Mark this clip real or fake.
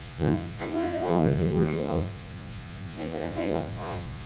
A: fake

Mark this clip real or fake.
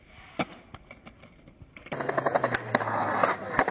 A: real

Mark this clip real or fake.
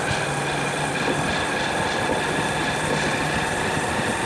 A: real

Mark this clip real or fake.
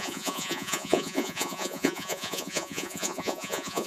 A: fake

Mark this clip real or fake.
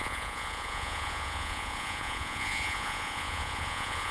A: fake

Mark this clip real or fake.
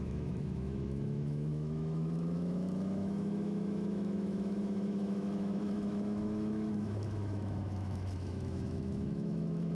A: fake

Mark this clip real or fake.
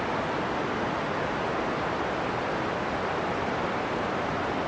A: real